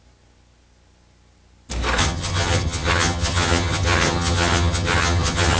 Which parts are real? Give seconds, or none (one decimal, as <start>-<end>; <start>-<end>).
0.0-2.0